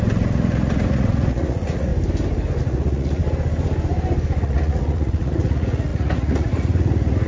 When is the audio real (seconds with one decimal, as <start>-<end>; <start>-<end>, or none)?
1.9-2.6; 3.2-4.4